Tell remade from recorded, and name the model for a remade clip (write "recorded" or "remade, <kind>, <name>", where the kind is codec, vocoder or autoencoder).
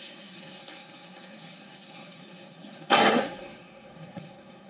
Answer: remade, codec, SNAC